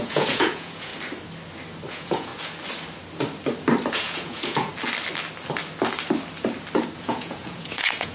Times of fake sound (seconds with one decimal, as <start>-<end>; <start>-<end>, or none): 0.0-0.9; 1.9-2.3; 3.9-4.7; 7.0-8.1